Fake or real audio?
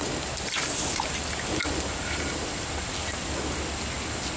real